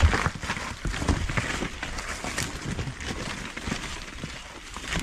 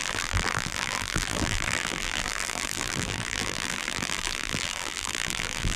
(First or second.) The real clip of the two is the first